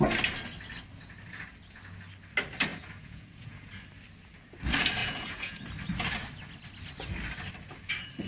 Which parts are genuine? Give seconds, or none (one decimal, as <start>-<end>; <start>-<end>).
0.0-2.7; 3.7-5.0; 5.6-8.3